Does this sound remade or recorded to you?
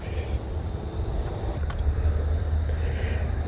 recorded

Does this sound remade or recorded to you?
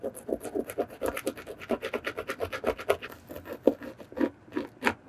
recorded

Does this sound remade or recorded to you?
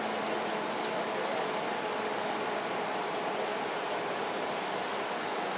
recorded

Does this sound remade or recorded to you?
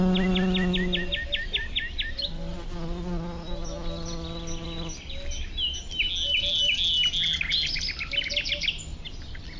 recorded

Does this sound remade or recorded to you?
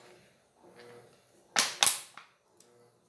recorded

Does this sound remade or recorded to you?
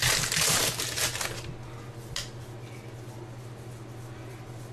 recorded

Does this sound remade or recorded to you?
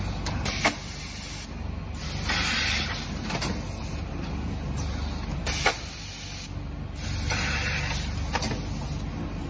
recorded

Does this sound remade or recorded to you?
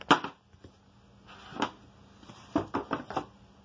recorded